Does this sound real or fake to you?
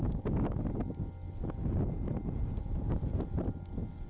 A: real